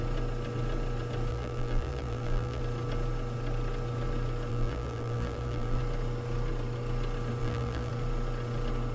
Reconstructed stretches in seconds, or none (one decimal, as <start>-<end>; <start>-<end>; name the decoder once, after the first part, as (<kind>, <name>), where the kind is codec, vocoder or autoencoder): 1.3-2.6 (vocoder, BigVGAN v2); 4.5-5.8; 7.4-7.9